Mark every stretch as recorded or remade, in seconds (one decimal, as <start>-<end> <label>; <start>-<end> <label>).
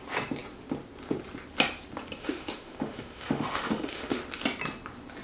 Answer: 0.0-2.2 recorded; 2.2-4.2 remade; 4.2-5.2 recorded